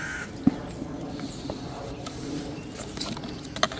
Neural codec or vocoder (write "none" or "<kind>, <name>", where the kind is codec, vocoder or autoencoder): none